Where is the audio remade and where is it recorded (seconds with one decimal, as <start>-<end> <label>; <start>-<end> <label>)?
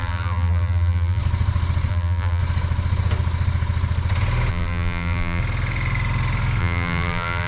0.0-1.2 remade; 1.2-1.9 recorded; 1.9-2.4 remade; 2.4-4.5 recorded; 4.5-5.4 remade; 5.4-6.6 recorded; 6.6-7.5 remade